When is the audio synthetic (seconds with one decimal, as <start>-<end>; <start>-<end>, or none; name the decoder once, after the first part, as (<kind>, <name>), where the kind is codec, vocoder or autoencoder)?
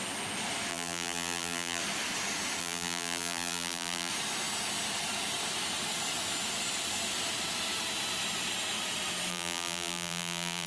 0.7-1.8 (vocoder, BigVGAN v2); 2.6-4.1; 9.3-10.7